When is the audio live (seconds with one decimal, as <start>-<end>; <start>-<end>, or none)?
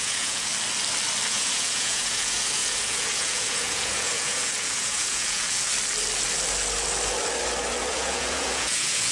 0.5-1.3; 5.7-7.8